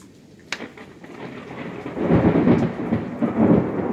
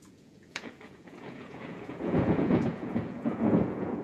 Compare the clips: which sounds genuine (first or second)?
first